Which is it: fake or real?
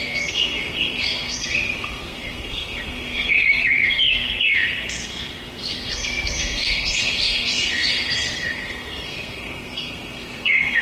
fake